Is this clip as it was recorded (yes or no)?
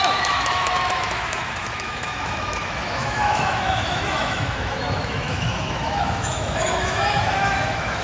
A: no